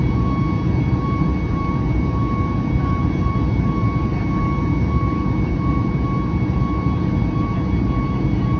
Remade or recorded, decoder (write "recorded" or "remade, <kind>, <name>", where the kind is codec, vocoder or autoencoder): remade, vocoder, BigVGAN v2